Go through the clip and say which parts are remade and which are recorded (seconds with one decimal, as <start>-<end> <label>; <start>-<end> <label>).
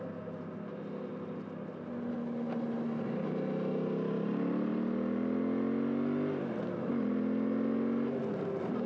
0.0-8.9 recorded